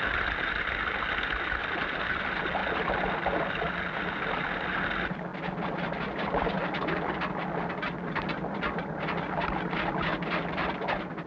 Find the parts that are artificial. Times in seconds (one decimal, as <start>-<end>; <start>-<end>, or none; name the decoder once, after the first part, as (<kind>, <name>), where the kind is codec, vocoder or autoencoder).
none